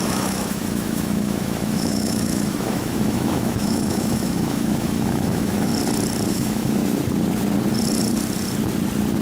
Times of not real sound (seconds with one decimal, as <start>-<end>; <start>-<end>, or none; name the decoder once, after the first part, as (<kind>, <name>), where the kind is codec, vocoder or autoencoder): 0.0-5.7 (autoencoder, DAC-VAE); 6.3-6.8